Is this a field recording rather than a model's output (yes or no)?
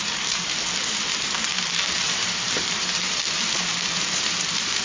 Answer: no